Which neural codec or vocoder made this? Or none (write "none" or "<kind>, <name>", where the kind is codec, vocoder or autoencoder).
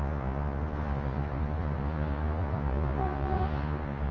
vocoder, Vocos